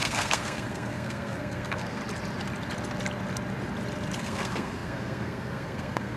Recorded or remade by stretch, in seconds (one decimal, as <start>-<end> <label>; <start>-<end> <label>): 0.0-2.0 remade; 2.0-4.2 recorded; 4.2-6.2 remade